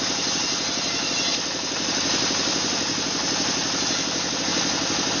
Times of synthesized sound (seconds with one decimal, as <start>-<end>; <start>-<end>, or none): none